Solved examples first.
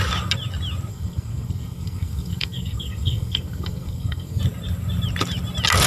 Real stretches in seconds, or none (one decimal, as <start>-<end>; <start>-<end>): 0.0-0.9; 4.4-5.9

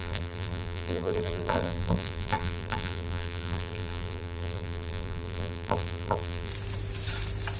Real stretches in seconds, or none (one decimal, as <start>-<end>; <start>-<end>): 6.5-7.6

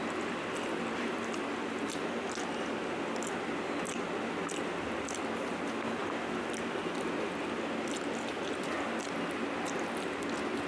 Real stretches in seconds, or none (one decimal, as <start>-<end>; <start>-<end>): 0.0-10.7

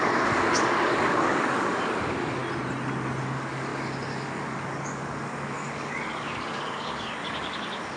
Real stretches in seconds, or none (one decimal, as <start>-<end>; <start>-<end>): 2.4-3.2